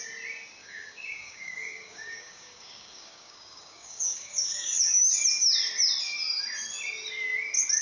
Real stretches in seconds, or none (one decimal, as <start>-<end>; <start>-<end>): 0.0-0.6; 5.0-7.8